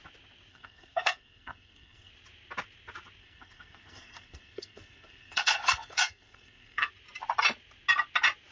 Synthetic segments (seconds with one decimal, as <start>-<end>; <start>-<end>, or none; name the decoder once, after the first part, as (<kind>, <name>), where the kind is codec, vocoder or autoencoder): 0.5-2.1 (codec, SNAC); 3.2-6.9